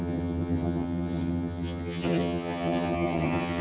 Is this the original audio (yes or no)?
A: no